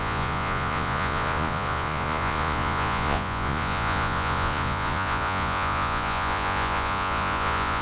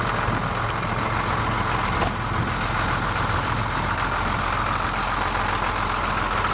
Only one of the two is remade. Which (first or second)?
first